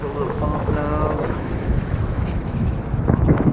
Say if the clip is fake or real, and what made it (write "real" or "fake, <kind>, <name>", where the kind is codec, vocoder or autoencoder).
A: fake, autoencoder, DAC-VAE